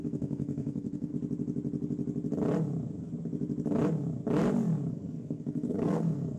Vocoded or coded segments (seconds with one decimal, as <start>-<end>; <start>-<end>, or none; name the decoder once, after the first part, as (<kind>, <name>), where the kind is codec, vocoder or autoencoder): 0.0-1.1 (codec, SNAC); 4.9-6.4